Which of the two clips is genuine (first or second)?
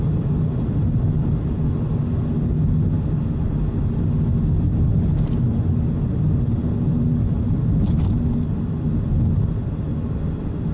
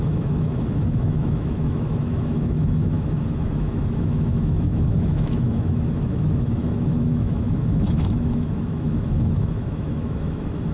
first